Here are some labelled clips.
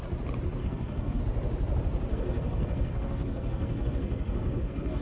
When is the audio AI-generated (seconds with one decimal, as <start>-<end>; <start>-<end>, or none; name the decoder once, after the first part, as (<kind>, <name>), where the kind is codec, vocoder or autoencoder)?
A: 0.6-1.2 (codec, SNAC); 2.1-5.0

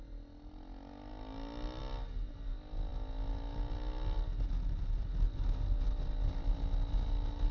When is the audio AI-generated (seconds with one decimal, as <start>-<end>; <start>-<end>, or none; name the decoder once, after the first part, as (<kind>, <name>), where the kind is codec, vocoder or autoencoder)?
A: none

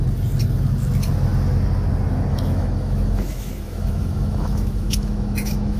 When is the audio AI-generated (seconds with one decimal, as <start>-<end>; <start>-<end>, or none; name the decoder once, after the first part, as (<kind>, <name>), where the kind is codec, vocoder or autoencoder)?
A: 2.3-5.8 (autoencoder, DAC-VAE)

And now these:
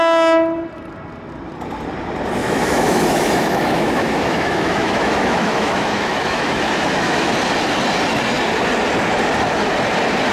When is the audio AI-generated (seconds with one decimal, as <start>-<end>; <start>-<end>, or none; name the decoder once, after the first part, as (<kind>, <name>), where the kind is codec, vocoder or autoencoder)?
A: 2.4-7.3 (autoencoder, DAC-VAE)

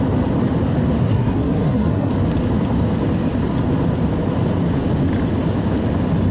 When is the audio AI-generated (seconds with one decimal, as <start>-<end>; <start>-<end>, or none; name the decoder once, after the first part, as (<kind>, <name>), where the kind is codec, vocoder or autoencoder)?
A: 1.0-2.1 (codec, SNAC)

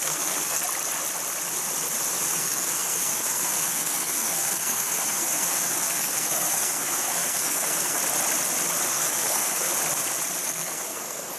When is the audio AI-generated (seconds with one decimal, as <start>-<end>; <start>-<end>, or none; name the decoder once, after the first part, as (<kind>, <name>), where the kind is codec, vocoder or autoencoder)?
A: 0.0-0.6 (codec, SNAC); 2.3-8.0; 8.9-9.7; 10.4-11.4